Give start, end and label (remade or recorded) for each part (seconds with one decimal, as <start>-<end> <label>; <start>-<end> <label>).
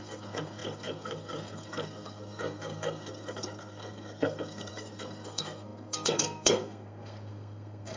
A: 0.0-8.0 remade